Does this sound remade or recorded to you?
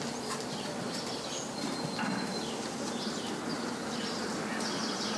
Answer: recorded